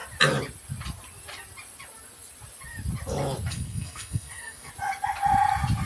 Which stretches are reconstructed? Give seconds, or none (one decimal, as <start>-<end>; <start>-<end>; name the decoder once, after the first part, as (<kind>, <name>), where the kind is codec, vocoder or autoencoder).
3.5-4.7 (codec, SNAC)